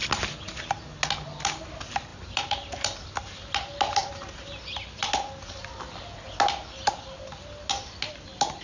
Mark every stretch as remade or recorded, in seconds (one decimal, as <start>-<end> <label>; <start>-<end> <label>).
0.0-2.1 recorded; 2.1-3.1 remade; 3.1-8.6 recorded